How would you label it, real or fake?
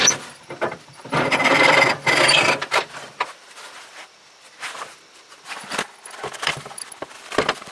fake